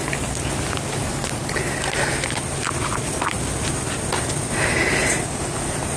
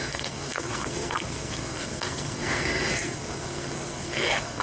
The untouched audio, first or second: first